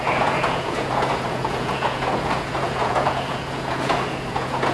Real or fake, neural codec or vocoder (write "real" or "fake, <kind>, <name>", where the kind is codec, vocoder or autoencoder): fake, vocoder, Vocos